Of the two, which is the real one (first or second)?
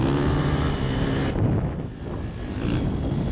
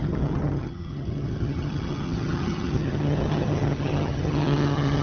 first